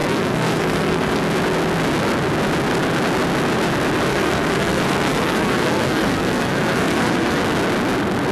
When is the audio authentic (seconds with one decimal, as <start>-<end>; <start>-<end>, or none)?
1.2-4.1; 7.4-8.3